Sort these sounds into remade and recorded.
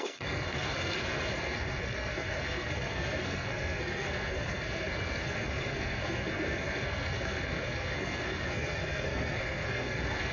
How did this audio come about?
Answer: remade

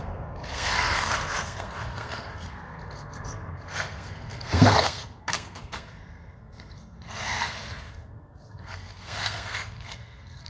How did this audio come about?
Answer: remade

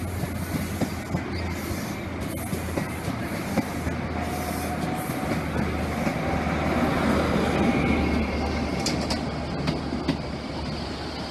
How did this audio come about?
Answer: recorded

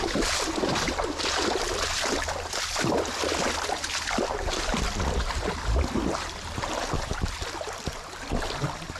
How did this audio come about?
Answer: recorded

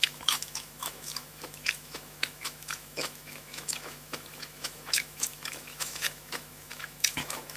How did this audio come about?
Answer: remade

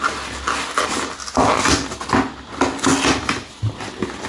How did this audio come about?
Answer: recorded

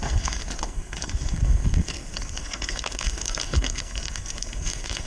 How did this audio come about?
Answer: remade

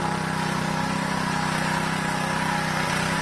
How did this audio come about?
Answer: recorded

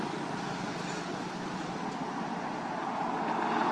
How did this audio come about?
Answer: recorded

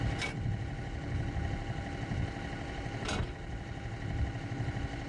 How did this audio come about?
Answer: recorded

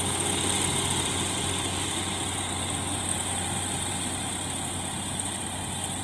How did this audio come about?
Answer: recorded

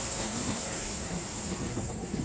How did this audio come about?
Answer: remade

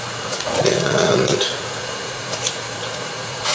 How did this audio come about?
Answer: remade